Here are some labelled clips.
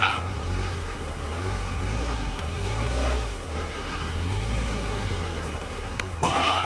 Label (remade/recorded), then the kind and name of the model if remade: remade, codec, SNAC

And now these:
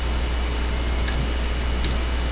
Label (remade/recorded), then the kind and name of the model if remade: recorded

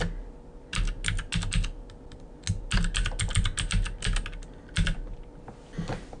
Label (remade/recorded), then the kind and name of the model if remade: recorded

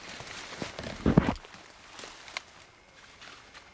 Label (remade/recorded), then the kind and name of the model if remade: recorded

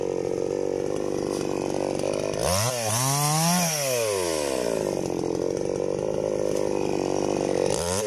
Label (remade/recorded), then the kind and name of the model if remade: recorded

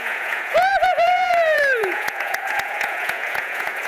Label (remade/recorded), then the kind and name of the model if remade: remade, vocoder, Vocos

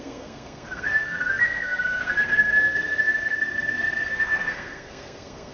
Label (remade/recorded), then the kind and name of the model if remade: remade, codec, SNAC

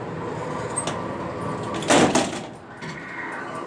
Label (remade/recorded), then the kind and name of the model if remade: recorded